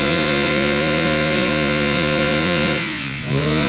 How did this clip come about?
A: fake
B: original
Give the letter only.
A